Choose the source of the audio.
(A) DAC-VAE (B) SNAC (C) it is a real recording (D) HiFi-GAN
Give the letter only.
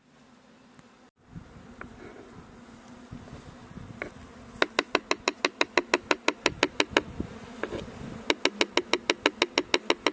C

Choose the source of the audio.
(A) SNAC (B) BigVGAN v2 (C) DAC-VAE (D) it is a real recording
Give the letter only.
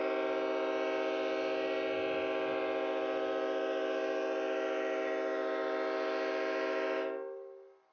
D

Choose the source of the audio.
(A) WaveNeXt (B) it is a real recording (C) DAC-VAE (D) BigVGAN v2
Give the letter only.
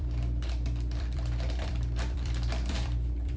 D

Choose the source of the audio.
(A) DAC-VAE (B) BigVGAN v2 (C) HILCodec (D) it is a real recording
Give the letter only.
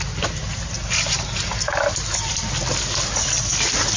D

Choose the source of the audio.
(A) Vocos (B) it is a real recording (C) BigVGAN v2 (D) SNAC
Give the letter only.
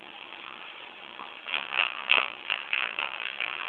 A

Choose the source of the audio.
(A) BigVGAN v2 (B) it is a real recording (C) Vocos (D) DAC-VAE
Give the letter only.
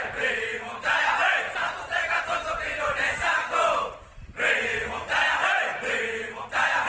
B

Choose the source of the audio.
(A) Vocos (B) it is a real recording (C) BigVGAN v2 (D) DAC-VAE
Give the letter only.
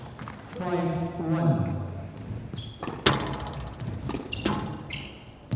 B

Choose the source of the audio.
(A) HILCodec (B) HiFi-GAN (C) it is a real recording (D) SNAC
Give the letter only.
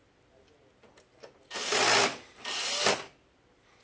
C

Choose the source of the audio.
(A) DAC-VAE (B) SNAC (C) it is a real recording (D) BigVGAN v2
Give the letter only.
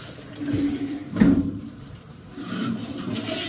D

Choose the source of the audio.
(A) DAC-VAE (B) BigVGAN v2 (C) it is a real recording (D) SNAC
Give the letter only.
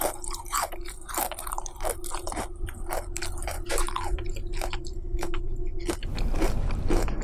B